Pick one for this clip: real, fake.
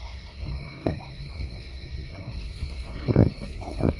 fake